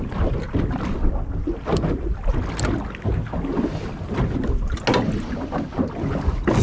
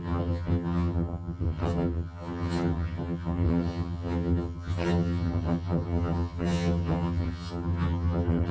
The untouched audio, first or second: first